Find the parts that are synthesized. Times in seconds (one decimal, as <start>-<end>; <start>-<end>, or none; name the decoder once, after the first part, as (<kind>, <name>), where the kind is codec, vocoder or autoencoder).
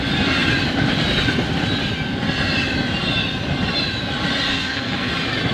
4.5-5.1 (codec, SNAC)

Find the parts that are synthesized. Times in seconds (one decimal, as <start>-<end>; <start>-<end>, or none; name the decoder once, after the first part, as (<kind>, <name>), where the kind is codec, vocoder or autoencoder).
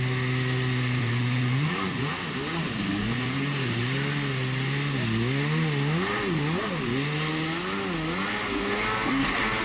1.0-2.1 (vocoder, Vocos); 3.0-3.8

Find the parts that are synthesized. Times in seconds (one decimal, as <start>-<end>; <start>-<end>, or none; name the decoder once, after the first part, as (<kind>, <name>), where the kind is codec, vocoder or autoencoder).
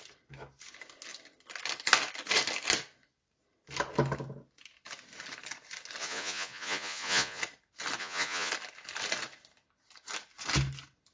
6.0-7.4 (vocoder, Vocos); 8.0-8.5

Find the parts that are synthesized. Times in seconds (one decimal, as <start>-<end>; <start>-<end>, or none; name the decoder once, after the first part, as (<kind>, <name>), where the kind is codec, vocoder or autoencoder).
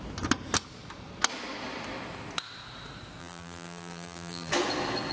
3.2-4.5 (vocoder, BigVGAN v2)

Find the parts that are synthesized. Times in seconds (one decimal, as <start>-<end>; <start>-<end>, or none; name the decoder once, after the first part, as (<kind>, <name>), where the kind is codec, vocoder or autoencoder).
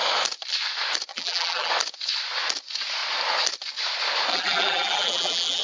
1.1-1.7 (vocoder, BigVGAN v2); 4.3-5.6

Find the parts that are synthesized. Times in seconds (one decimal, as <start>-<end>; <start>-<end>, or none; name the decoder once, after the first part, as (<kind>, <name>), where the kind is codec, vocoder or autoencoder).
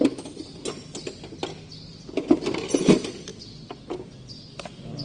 none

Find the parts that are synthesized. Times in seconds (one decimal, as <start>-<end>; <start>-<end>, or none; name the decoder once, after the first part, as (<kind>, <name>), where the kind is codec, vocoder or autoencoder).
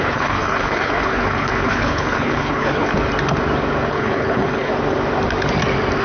0.0-2.9 (codec, HILCodec); 3.9-4.7